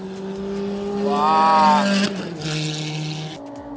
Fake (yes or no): no